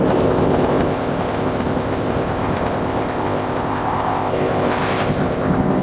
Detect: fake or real fake